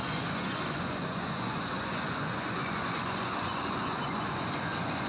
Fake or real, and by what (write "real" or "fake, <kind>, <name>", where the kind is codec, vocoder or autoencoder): fake, vocoder, Vocos